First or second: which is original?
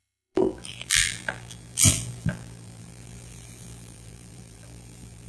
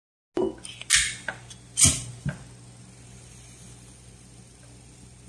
second